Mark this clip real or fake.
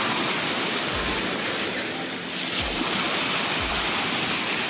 real